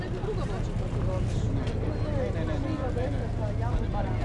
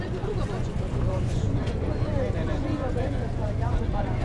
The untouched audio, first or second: first